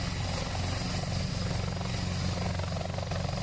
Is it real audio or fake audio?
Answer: real